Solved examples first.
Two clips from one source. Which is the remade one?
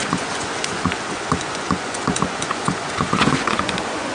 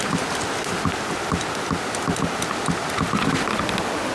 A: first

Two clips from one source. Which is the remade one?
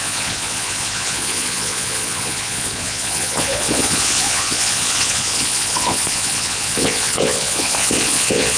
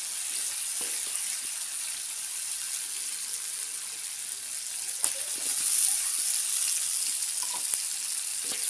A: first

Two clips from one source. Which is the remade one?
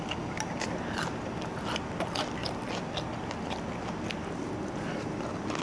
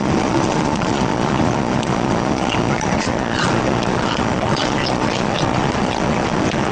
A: second